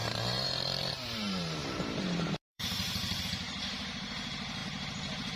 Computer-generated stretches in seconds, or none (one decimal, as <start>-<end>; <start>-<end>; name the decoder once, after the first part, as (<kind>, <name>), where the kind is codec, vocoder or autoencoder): 0.0-5.4 (vocoder, BigVGAN v2)